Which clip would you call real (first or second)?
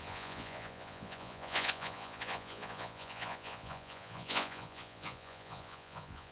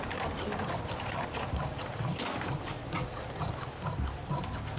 second